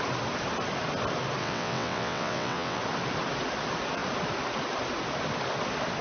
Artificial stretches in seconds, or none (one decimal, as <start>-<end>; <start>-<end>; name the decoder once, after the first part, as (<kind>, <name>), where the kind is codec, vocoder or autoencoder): 1.4-2.8 (vocoder, WaveNeXt)